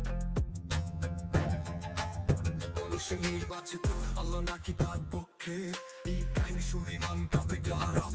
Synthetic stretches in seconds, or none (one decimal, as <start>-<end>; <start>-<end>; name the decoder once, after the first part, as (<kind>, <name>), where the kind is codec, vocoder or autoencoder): 0.5-3.5 (vocoder, HiFi-GAN); 4.6-5.2; 6.8-8.1